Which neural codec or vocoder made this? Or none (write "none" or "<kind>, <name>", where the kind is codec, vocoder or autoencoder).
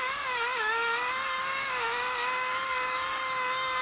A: codec, DAC